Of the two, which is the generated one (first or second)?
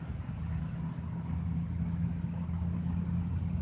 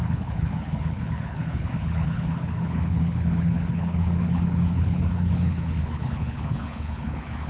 second